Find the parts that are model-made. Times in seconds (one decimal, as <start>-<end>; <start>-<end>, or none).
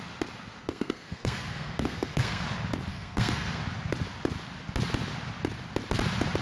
0.6-2.4; 2.9-3.6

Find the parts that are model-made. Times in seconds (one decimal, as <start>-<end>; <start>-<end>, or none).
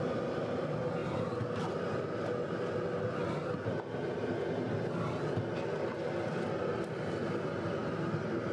none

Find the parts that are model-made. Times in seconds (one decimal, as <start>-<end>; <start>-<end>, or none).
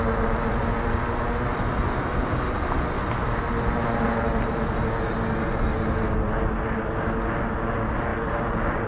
none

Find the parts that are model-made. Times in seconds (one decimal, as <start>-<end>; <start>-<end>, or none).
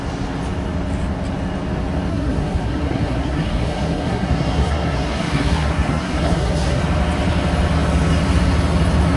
2.1-6.8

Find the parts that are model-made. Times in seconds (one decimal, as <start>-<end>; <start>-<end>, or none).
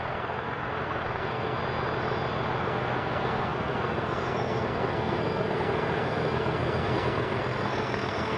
0.0-1.6; 2.6-8.4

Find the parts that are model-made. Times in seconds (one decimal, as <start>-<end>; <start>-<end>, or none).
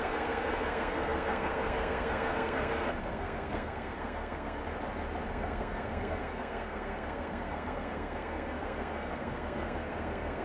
0.0-4.6; 5.3-10.4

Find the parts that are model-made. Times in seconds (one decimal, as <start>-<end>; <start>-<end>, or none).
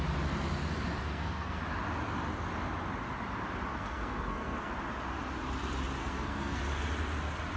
1.0-1.6; 3.7-4.7; 6.0-6.6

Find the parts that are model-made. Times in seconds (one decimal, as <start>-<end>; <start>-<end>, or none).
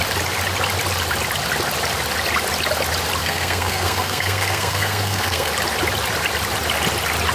3.2-5.5